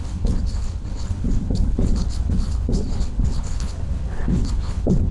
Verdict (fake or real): fake